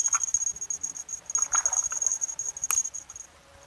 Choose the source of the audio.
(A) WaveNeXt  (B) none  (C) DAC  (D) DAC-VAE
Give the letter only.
B